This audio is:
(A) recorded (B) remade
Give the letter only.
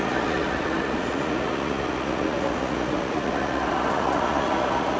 B